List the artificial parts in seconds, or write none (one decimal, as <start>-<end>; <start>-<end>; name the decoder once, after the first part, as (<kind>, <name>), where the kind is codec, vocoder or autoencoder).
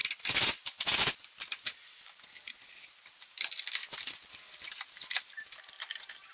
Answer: none